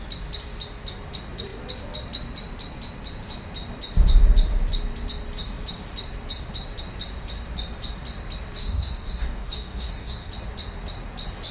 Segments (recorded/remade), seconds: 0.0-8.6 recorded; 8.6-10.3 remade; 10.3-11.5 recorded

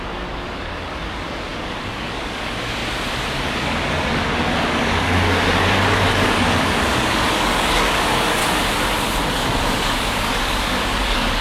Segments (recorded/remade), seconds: 0.0-2.8 remade; 2.8-3.4 recorded; 3.4-8.4 remade; 8.4-9.3 recorded; 9.3-11.4 remade